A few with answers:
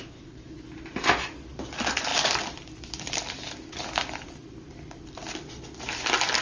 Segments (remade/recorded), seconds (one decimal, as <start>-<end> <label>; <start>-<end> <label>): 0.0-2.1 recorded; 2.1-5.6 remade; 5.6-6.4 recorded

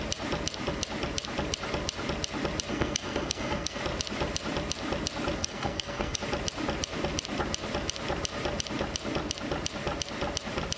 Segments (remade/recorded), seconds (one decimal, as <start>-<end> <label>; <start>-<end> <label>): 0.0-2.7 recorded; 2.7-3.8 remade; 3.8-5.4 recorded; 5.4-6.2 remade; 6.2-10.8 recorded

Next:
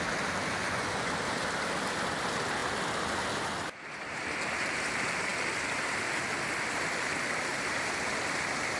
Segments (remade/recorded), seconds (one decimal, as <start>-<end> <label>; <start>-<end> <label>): 0.0-0.6 recorded; 0.6-1.1 remade; 1.1-8.8 recorded

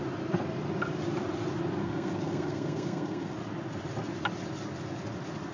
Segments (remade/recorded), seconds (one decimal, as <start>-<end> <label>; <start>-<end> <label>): 0.0-1.8 recorded; 1.8-3.3 remade; 3.3-5.5 recorded